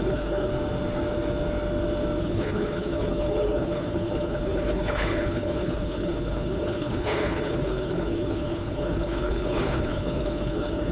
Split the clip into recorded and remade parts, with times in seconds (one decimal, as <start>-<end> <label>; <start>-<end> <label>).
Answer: 0.0-0.5 remade; 0.5-2.2 recorded; 2.2-10.9 remade